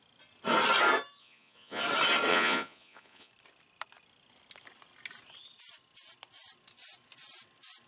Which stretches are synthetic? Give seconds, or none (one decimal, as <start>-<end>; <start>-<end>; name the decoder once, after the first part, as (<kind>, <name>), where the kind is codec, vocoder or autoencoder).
1.2-1.8 (vocoder, Vocos); 2.3-3.3